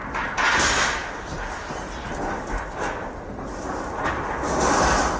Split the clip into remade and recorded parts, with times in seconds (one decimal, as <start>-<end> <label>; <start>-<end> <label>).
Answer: 0.0-5.2 recorded